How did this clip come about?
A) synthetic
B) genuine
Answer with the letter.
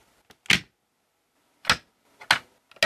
B